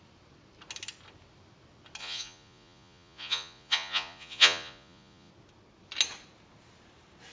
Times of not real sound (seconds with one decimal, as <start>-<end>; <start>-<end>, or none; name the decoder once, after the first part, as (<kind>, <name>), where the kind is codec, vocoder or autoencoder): 2.0-5.3 (vocoder, Vocos)